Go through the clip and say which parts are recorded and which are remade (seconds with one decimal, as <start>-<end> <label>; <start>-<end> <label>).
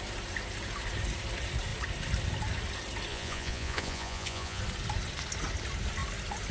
0.0-3.1 recorded; 3.1-4.6 remade; 4.6-6.5 recorded